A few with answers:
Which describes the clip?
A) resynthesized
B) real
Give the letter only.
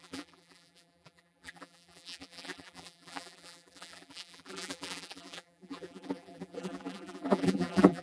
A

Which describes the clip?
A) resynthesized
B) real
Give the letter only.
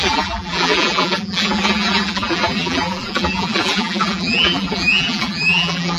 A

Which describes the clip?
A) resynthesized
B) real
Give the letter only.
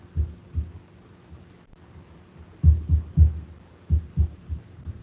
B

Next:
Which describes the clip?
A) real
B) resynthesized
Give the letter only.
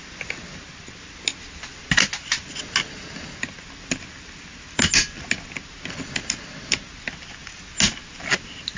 A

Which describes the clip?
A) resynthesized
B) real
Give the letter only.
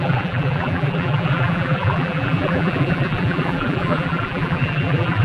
A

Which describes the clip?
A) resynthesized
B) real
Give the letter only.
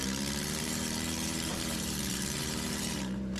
A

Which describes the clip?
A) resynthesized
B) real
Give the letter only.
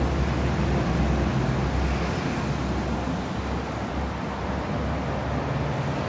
B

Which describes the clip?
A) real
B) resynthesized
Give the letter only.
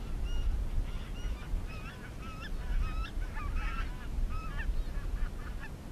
A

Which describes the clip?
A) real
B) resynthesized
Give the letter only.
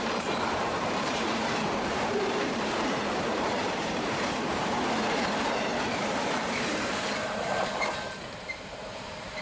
B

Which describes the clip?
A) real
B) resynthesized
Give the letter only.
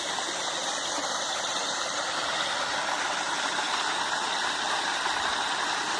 B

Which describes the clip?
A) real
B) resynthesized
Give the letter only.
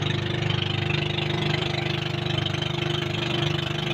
B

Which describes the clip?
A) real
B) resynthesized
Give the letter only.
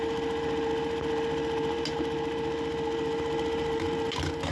A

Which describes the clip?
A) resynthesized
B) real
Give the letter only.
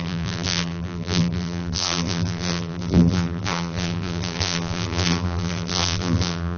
A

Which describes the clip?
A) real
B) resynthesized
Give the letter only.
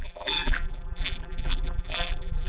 B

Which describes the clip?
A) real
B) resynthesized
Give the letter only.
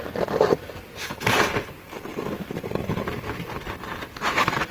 B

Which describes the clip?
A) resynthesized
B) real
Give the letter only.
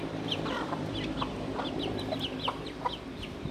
A